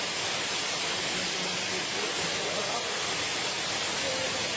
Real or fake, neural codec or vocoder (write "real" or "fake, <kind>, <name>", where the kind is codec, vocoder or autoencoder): real